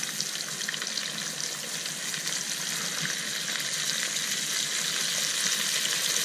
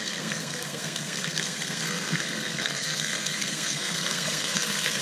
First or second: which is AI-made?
second